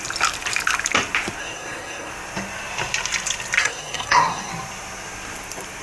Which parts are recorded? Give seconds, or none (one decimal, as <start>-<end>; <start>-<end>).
0.0-1.4; 2.1-3.6; 4.5-5.8